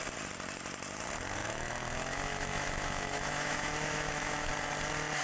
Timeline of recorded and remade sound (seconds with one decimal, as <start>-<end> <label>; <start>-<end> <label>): 0.0-1.4 recorded; 1.4-4.5 remade; 4.5-5.2 recorded